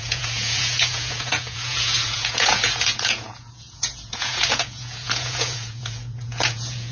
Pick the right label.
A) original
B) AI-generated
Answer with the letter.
B